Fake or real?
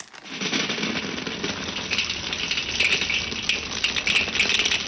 real